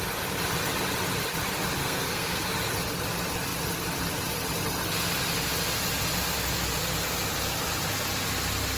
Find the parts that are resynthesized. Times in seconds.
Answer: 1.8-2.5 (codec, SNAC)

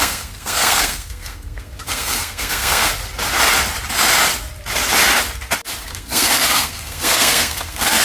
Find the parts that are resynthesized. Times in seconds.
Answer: 0.0-2.9 (codec, SNAC); 5.9-8.0

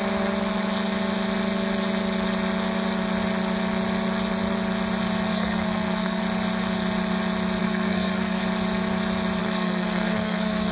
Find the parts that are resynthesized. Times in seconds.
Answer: 5.3-6.2 (codec, SNAC); 7.6-8.4; 9.4-10.7

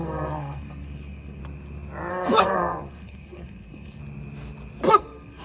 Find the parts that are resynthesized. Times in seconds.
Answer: 0.0-1.4 (codec, SNAC); 2.1-4.0; 4.9-5.4

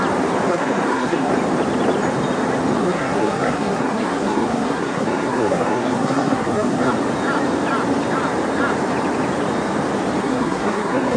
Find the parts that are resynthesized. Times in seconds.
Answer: 0.5-1.3 (codec, SNAC); 2.8-6.9; 10.2-11.2

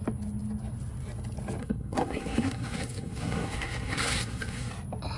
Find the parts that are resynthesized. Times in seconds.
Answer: 1.6-4.7 (codec, SNAC)